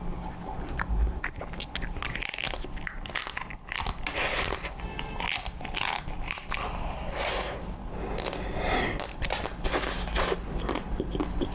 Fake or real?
real